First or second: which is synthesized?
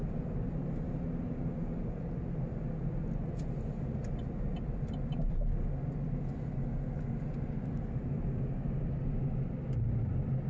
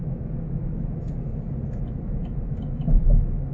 second